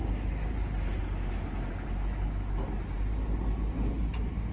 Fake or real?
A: real